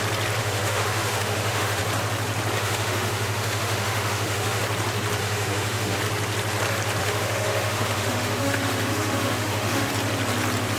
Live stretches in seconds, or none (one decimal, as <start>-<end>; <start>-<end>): 0.0-0.4; 1.8-2.6; 4.6-5.2; 6.0-7.0; 9.9-10.8